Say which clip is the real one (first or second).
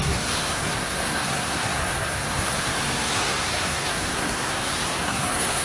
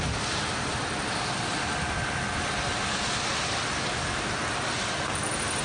second